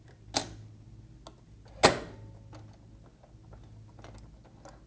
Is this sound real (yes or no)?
yes